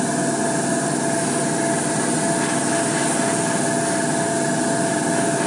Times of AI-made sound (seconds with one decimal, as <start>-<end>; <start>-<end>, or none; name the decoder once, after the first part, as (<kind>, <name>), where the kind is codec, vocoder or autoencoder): none